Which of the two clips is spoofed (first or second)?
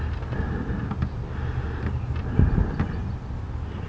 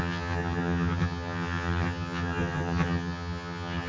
second